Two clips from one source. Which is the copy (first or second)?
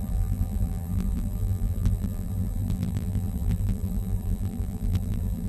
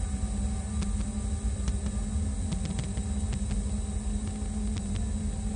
first